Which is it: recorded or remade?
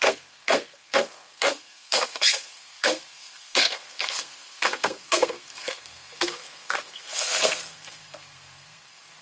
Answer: remade